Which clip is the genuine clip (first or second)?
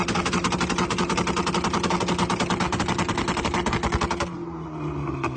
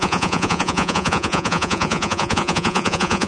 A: first